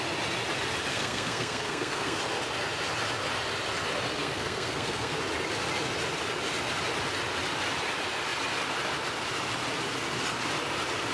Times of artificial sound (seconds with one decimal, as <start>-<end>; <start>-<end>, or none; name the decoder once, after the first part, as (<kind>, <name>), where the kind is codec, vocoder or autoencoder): 0.9-2.2 (codec, SNAC); 4.2-5.2